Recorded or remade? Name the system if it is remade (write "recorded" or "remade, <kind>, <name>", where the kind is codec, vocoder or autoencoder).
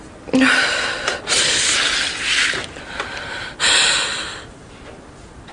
recorded